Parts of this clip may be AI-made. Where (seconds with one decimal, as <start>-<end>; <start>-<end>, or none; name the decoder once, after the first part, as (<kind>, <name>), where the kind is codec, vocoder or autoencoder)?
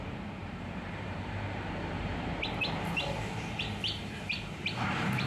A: 0.0-5.3 (vocoder, BigVGAN v2)